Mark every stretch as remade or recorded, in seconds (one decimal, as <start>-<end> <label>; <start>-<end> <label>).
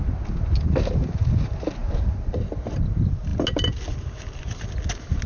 0.0-5.3 recorded